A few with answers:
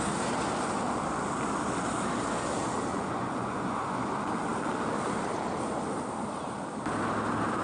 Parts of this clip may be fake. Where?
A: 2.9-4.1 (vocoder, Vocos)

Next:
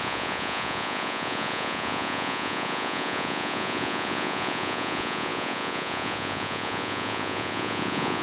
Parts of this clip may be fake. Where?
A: 0.0-8.2 (vocoder, Vocos)

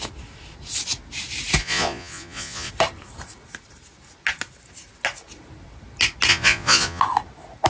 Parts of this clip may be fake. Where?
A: 1.6-2.7 (vocoder, Vocos); 6.3-7.0

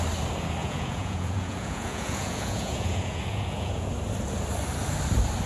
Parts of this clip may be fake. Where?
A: 0.6-3.9 (vocoder, Vocos)